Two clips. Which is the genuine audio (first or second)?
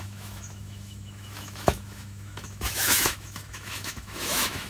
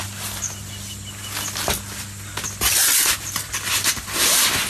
second